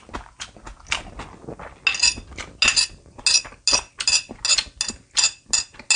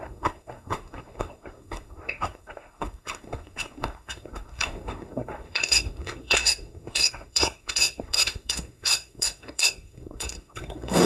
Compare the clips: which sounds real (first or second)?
first